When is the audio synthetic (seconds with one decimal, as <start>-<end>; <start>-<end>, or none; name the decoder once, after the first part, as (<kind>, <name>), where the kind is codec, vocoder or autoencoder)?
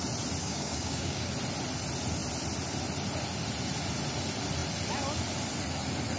0.4-1.3 (codec, DAC)